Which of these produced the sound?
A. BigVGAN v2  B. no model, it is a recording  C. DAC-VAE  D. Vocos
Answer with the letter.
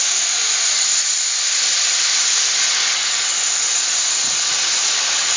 B